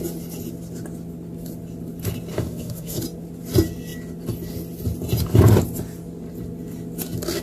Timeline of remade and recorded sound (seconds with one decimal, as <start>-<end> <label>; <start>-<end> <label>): 0.0-2.3 recorded; 2.3-3.0 remade; 3.0-7.4 recorded